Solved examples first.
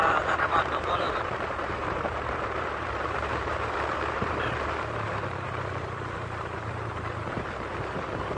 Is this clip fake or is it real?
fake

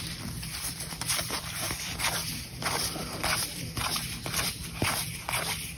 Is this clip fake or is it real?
fake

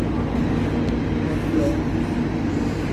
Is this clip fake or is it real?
real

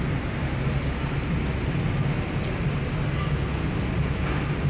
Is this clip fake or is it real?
real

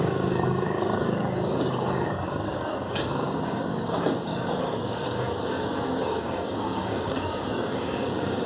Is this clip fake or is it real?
fake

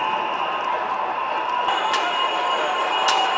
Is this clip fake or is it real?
real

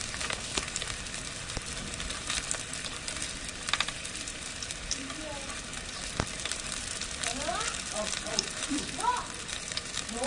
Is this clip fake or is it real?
fake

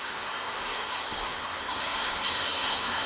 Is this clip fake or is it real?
fake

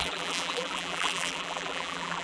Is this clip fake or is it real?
fake